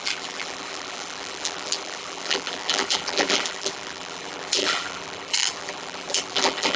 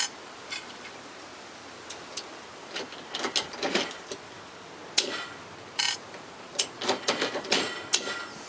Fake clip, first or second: first